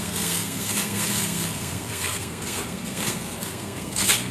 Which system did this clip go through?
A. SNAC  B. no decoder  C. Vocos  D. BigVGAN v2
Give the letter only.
A